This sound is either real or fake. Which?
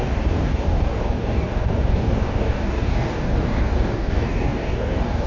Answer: fake